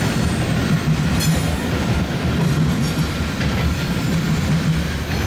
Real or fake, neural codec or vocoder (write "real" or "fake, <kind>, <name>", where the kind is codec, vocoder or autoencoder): real